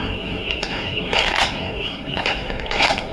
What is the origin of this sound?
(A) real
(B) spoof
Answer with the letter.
B